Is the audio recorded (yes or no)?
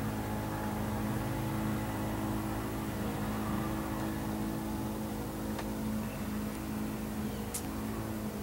yes